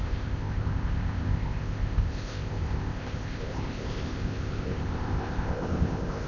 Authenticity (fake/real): fake